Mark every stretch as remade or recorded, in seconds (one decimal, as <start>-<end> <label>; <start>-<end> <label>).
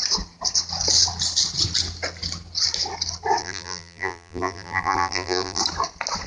0.0-3.4 recorded; 3.4-5.6 remade; 5.6-6.3 recorded